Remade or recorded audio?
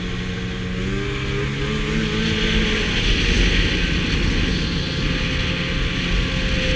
recorded